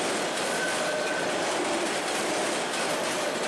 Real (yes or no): yes